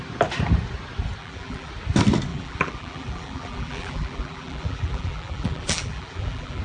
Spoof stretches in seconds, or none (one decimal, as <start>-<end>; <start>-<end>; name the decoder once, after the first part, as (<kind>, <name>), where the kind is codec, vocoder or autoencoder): 1.2-1.7 (vocoder, BigVGAN v2); 2.3-6.6